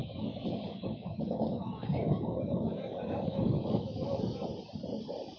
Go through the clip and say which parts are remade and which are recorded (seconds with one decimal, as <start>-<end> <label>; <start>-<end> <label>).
0.0-4.5 remade; 4.5-5.4 recorded